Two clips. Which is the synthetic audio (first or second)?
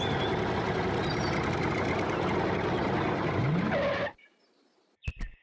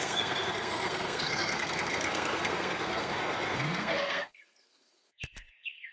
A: second